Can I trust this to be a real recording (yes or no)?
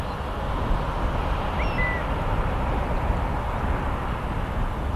yes